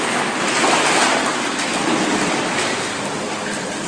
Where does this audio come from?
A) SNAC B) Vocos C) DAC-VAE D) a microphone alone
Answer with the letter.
D